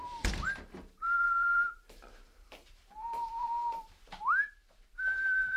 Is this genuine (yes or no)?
no